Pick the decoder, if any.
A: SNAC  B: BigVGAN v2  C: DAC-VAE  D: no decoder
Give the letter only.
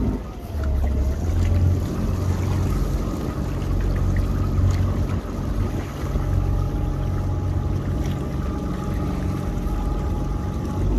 D